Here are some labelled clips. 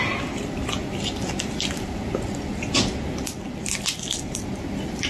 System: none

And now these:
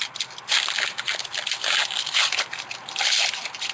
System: none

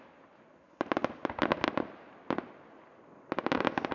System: none